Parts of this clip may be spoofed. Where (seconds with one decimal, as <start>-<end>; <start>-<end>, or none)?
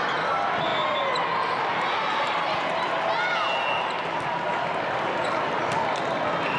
none